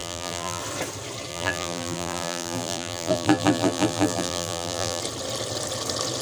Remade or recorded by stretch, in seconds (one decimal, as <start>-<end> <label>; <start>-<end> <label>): 0.0-0.6 remade; 0.6-1.3 recorded; 1.3-5.0 remade; 5.0-6.2 recorded